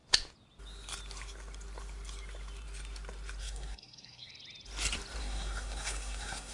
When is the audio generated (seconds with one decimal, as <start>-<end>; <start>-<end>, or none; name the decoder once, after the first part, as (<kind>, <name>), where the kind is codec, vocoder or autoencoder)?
3.4-4.3 (codec, SNAC); 5.2-6.5